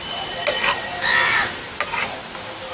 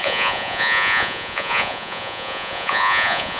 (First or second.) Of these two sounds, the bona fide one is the first